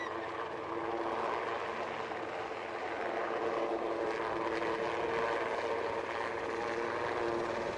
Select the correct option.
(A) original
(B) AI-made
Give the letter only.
A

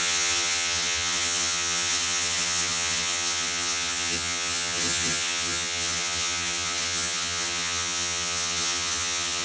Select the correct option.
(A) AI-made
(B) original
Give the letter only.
A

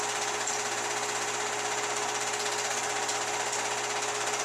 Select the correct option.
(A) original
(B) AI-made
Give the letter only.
A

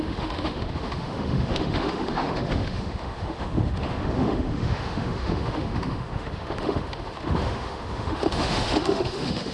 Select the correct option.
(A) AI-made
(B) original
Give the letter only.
A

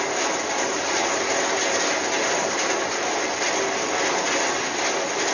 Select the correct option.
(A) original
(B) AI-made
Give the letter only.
A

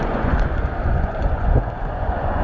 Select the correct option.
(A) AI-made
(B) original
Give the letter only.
A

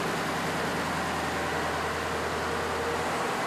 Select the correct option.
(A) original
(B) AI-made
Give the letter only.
A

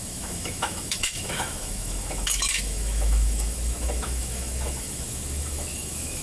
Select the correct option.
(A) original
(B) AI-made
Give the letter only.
B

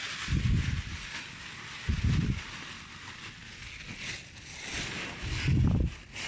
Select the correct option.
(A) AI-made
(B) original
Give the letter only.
B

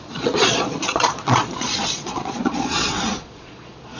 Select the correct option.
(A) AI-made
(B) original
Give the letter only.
A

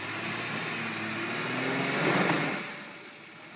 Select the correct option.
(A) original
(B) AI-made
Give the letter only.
A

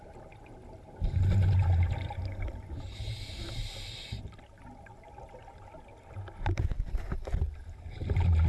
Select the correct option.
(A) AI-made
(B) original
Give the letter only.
B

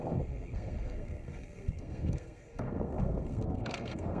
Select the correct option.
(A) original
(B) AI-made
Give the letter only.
B